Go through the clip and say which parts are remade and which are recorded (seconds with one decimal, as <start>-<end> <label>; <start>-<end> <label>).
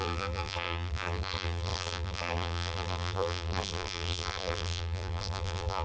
0.0-5.8 remade